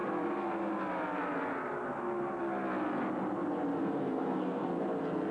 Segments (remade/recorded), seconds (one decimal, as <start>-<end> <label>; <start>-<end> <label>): 0.0-3.8 recorded; 3.8-4.7 remade; 4.7-5.3 recorded